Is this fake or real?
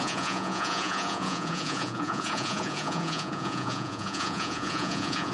fake